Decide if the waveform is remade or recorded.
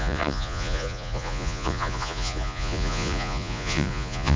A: remade